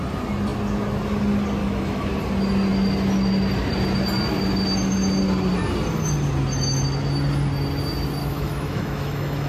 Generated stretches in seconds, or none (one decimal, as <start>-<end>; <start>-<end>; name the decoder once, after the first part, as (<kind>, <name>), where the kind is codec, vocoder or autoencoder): 1.6-2.1 (autoencoder, DAC-VAE); 8.2-9.5